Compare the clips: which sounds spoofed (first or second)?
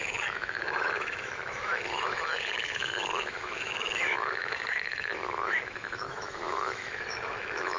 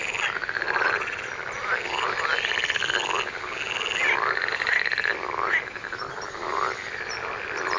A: first